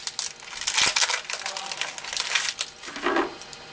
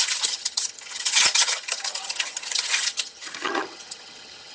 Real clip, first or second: first